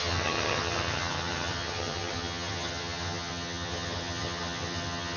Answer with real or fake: fake